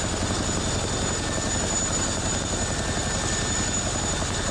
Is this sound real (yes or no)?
yes